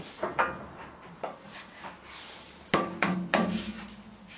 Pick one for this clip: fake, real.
real